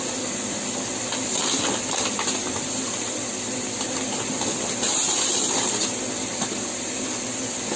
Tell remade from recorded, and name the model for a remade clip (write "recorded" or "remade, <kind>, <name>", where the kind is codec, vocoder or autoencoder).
recorded